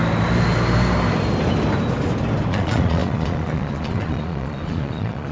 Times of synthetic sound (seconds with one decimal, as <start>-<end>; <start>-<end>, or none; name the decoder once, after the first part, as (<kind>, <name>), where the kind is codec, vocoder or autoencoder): 2.5-5.3 (vocoder, Vocos)